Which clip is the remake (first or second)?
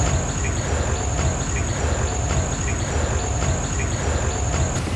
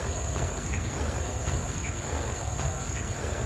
second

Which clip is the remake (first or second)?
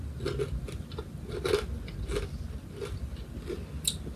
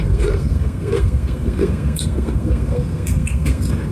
second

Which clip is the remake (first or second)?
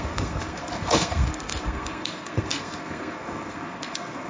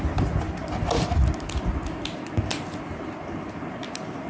first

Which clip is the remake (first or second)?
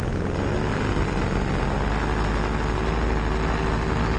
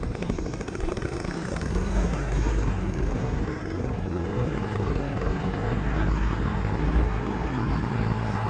second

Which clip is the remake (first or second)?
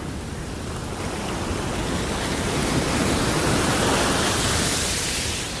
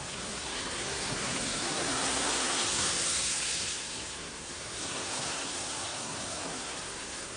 second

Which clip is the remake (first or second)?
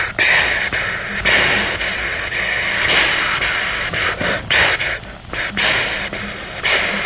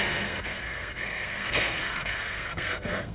second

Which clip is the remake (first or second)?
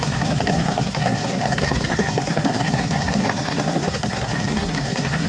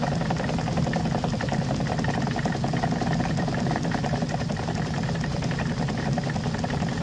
first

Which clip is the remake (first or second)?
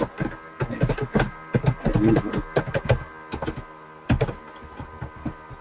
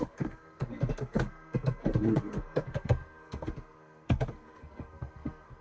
second